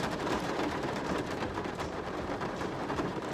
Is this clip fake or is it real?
fake